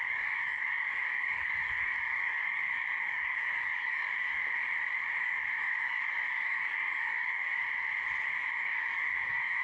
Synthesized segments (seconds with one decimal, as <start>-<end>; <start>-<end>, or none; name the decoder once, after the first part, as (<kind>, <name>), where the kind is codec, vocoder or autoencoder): 0.0-4.4 (codec, DAC); 5.2-7.6; 8.2-9.6